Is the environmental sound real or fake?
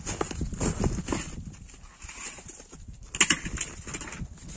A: real